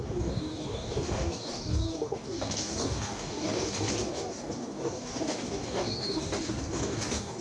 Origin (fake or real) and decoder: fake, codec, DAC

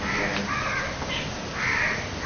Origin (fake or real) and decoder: real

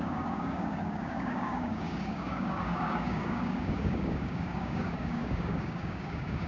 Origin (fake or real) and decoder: fake, codec, DAC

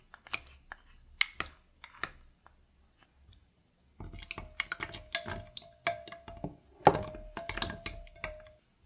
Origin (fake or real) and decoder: real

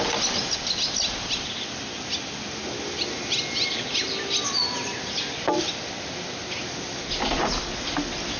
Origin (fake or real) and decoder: real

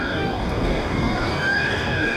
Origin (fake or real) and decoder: fake, codec, DAC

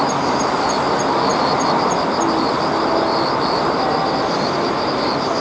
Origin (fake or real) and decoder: real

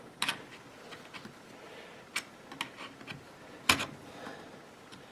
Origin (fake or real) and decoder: real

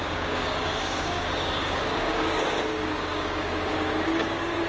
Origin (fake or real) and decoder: fake, codec, DAC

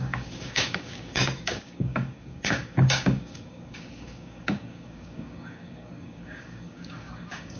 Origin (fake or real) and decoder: fake, codec, DAC